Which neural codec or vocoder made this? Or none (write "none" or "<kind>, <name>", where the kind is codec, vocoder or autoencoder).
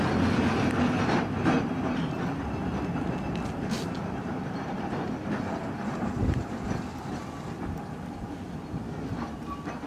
none